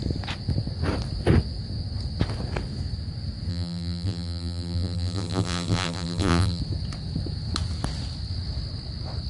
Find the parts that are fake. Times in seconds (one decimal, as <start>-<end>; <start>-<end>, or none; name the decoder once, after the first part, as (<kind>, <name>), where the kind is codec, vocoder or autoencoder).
3.5-6.6 (vocoder, BigVGAN v2)